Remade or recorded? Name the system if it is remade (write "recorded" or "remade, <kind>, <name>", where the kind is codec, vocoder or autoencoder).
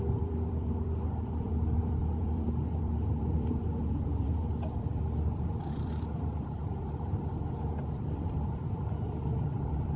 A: remade, vocoder, BigVGAN v2